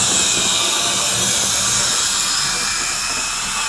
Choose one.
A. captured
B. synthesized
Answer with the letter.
A